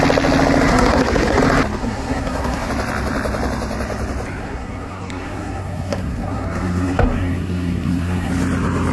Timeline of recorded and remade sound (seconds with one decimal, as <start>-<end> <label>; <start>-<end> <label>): 0.0-0.7 recorded; 0.7-1.4 remade; 1.4-1.8 recorded; 1.8-2.7 remade; 2.7-4.4 recorded; 4.4-8.3 remade; 8.3-8.9 recorded